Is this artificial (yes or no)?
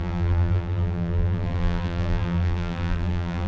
yes